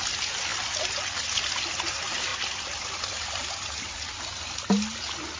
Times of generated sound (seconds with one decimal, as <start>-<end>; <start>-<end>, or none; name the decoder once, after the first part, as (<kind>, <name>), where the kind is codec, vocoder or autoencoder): none